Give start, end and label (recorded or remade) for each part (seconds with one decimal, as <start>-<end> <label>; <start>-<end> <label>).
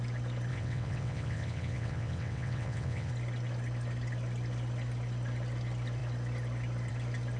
0.0-0.5 recorded; 0.5-3.1 remade; 3.1-7.4 recorded